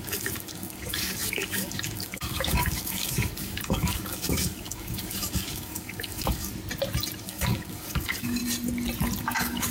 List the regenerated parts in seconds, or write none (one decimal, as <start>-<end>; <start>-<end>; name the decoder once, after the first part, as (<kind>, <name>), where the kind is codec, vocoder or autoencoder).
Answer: 0.0-6.5 (codec, DAC); 7.2-8.4; 9.2-9.7